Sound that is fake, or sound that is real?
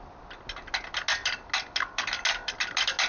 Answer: real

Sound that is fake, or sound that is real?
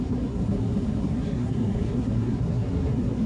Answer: fake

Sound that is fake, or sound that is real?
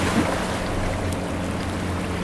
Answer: real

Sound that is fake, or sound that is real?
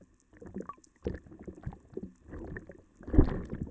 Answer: real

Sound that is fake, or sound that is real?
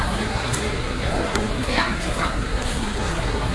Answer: fake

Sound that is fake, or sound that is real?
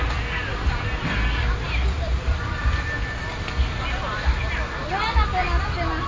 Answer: real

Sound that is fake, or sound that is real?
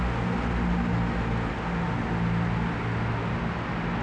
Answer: real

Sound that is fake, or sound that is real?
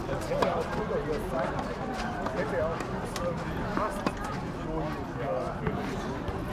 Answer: real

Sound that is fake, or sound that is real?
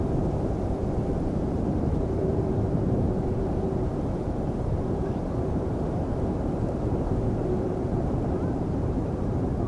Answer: fake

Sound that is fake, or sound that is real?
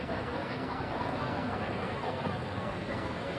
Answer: fake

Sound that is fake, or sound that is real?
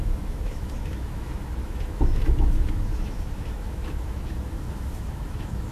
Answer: fake